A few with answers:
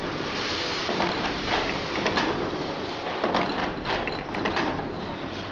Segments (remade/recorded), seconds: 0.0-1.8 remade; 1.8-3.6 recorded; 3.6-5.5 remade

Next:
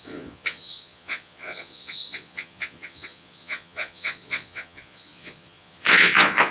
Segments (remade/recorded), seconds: 0.0-6.5 remade

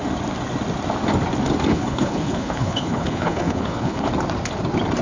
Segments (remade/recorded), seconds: 0.0-1.7 recorded; 1.7-4.1 remade; 4.1-5.0 recorded